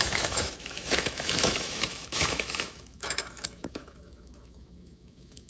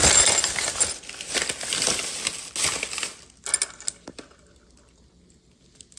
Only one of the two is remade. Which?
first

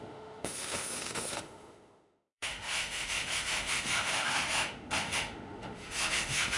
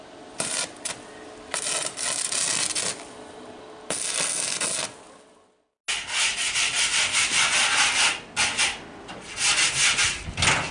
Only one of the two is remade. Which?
first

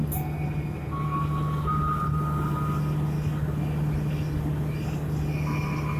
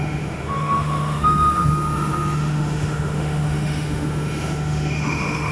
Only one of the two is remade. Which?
second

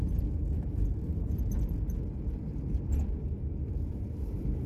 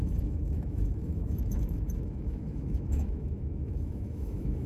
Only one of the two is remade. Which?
second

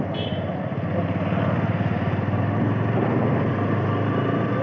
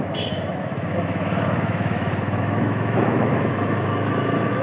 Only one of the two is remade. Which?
second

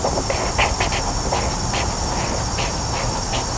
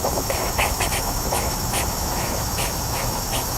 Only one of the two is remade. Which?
second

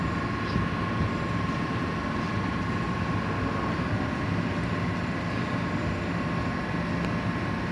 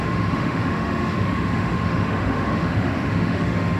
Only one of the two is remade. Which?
second